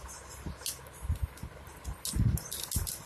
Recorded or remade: recorded